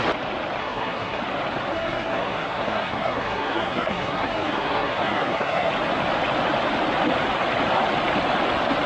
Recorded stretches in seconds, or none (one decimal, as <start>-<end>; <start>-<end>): 0.0-0.6; 1.2-1.7; 5.7-8.9